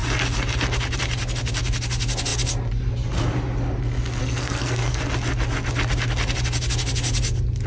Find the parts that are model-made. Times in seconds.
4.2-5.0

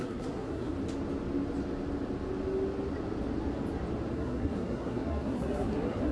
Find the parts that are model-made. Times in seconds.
0.0-0.7; 4.1-6.1

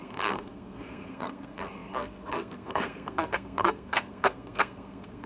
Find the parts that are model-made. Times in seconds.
0.0-5.3

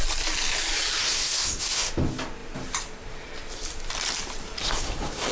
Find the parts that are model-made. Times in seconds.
1.0-1.9; 4.6-5.3

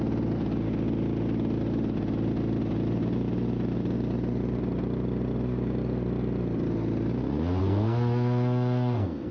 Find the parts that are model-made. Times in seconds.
7.6-9.3

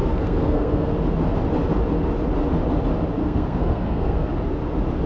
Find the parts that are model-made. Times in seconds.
0.0-0.9; 3.2-4.3